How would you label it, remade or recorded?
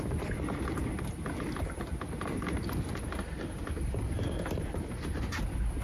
recorded